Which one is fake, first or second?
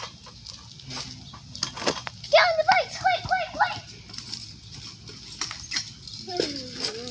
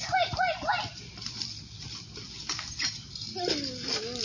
second